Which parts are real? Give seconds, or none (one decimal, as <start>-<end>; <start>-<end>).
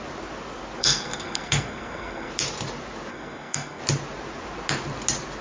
0.0-0.8; 2.3-3.1; 3.8-5.4